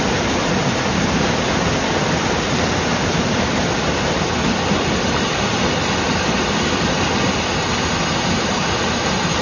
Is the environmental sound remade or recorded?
recorded